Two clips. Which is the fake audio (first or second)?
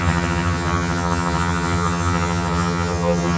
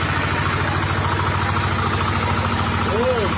first